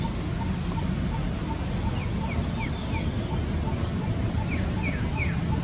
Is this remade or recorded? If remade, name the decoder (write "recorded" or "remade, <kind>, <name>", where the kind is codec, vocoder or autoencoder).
recorded